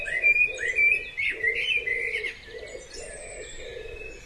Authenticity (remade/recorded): recorded